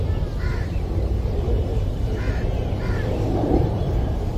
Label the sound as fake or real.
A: fake